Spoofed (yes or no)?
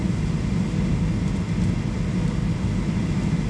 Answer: no